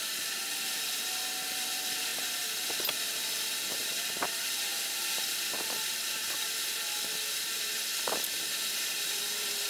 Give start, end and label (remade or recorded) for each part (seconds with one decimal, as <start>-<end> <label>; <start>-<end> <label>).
0.0-4.7 recorded; 4.7-9.7 remade